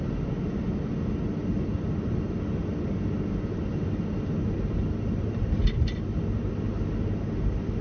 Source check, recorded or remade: recorded